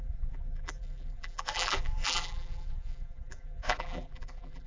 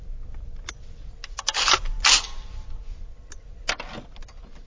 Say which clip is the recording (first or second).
second